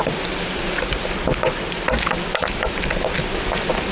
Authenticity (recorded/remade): recorded